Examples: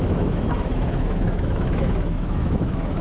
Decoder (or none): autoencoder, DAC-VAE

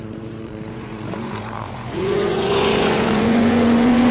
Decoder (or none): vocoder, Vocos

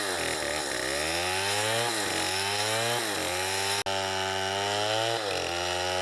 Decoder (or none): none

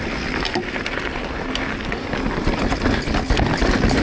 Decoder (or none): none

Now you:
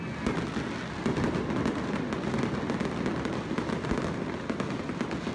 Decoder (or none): none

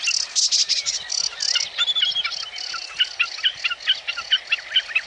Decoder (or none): none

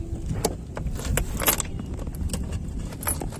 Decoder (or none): none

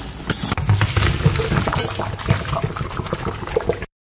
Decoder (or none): none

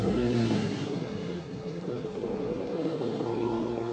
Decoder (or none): codec, SNAC